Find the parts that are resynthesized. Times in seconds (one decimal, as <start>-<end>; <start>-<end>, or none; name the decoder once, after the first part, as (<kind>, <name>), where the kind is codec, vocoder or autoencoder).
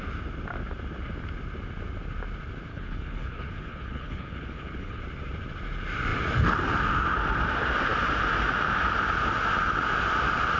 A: 2.7-5.0 (codec, HILCodec)